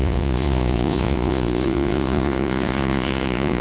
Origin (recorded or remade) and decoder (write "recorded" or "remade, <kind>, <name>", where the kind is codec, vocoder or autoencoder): remade, vocoder, Vocos